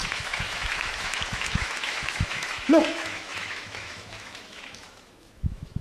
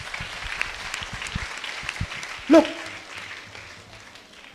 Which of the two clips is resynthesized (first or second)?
first